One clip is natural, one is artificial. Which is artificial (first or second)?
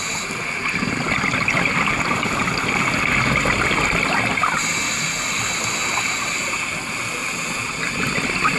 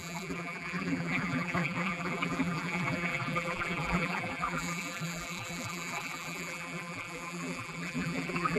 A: second